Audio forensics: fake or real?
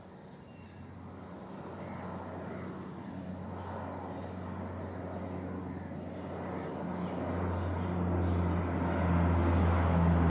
real